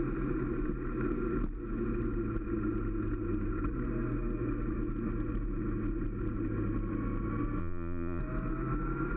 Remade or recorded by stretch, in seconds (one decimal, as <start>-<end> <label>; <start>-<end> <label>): 0.0-7.6 recorded; 7.6-8.2 remade; 8.2-9.2 recorded